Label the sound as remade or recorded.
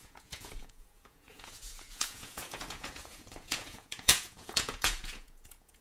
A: remade